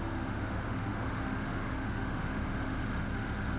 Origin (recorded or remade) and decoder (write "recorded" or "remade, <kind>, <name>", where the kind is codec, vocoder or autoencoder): remade, autoencoder, DAC-VAE